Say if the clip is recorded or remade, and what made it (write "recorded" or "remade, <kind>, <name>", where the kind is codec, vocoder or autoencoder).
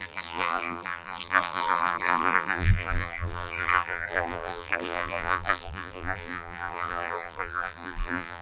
remade, vocoder, BigVGAN v2